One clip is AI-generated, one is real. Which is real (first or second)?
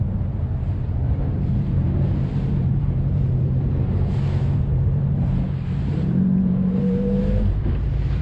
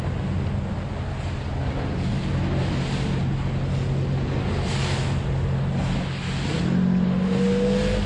second